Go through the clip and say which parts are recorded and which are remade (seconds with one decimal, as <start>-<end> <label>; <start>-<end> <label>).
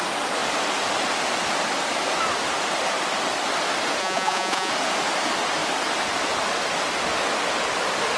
0.0-4.0 recorded; 4.0-4.7 remade; 4.7-8.2 recorded